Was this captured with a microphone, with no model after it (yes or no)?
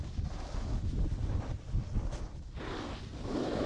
yes